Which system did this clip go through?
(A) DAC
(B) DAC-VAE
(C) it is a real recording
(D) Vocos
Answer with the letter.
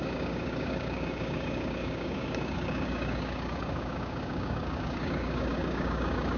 A